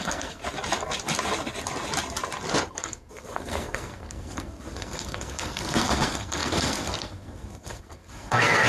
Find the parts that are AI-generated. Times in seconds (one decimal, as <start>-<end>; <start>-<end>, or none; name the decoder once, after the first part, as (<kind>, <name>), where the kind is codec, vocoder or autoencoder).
0.0-0.4 (codec, SNAC); 2.7-8.7